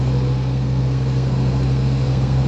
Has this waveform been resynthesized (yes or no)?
yes